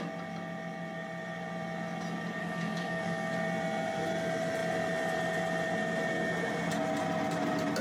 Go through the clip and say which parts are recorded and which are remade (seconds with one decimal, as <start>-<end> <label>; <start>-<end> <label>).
0.0-2.4 recorded; 2.4-3.3 remade; 3.3-7.8 recorded